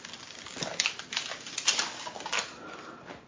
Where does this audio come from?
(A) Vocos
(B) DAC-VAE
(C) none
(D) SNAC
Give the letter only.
C